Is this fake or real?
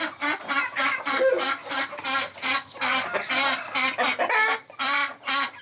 real